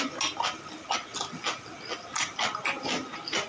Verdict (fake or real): real